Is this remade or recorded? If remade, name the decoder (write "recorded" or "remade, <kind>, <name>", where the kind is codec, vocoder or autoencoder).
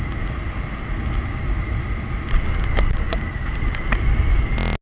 recorded